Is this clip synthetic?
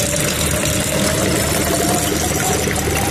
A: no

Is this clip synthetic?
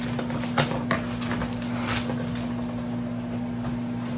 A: no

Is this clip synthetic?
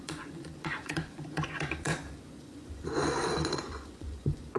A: yes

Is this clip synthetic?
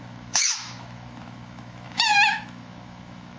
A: yes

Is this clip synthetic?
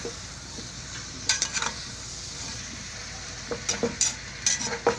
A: yes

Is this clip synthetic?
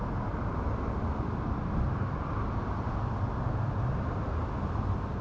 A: no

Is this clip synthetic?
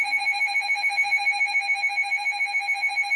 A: yes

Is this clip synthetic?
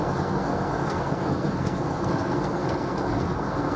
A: yes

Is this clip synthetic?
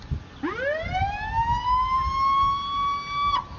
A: no